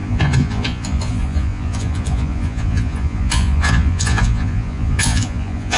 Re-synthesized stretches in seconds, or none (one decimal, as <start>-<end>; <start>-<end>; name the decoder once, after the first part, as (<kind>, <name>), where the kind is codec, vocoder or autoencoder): 0.0-5.8 (vocoder, Vocos)